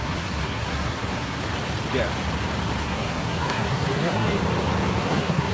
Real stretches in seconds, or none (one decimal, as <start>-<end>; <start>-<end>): 1.4-2.8; 4.4-5.0